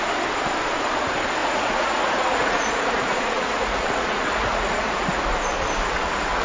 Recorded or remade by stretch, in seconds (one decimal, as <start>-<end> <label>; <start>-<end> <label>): 0.0-1.4 recorded; 1.4-5.2 remade; 5.2-6.4 recorded